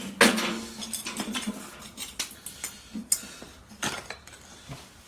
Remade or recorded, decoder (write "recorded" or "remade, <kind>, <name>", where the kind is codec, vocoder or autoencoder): recorded